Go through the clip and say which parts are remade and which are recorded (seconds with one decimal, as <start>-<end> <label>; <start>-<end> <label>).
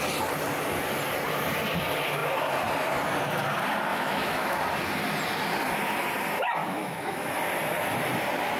0.0-3.9 recorded; 3.9-4.6 remade; 4.6-6.6 recorded; 6.6-7.3 remade; 7.3-8.6 recorded